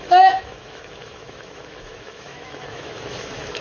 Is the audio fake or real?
fake